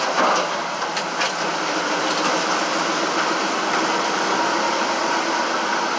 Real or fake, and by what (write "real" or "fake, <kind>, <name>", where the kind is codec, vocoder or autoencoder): real